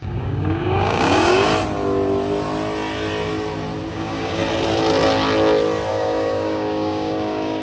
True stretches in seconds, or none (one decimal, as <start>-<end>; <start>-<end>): 1.5-3.9; 4.4-5.9